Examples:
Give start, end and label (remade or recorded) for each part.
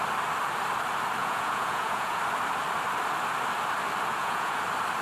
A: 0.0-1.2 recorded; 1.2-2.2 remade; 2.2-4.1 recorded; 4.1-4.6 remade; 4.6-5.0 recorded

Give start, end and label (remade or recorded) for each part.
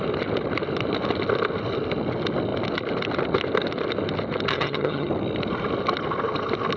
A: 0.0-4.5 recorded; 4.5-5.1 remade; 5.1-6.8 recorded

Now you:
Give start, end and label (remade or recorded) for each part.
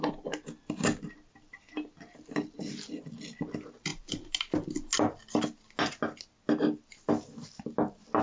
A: 0.0-8.2 recorded